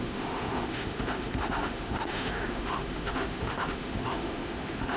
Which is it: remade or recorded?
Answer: remade